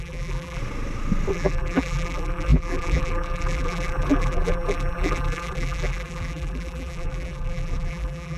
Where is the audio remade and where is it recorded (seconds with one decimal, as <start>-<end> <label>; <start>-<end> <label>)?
0.0-0.6 remade; 0.6-1.3 recorded; 1.3-8.4 remade